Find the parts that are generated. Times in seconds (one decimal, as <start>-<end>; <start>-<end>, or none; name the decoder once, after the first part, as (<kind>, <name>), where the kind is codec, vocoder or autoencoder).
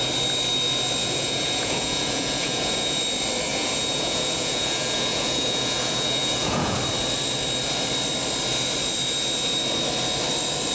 1.0-3.0 (vocoder, Vocos); 3.5-6.8